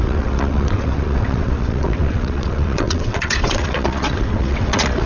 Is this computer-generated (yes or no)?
yes